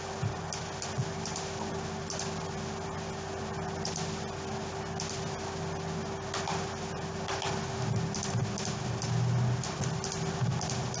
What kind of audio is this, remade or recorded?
recorded